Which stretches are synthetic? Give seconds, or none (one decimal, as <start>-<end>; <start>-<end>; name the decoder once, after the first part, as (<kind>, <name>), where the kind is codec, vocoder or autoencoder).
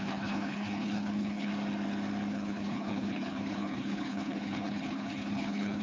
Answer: 0.0-1.5 (codec, HILCodec); 2.3-5.8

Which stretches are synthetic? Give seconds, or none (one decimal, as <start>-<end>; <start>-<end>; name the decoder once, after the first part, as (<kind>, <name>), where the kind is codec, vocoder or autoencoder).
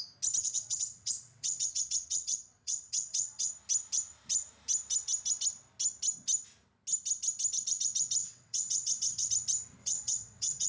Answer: 0.4-3.5 (vocoder, WaveNeXt); 8.2-9.3; 9.8-10.7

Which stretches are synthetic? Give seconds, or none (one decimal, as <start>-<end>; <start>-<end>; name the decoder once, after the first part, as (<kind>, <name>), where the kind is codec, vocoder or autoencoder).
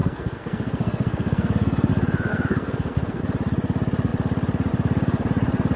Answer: 0.0-1.9 (codec, SNAC); 2.3-3.2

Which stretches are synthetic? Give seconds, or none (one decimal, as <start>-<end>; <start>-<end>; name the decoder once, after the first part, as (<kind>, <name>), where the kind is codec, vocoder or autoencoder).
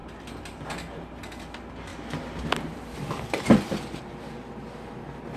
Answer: none